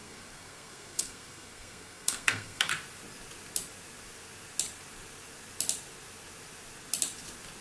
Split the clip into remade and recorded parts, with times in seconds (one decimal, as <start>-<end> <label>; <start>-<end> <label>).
0.0-2.7 remade; 2.7-7.6 recorded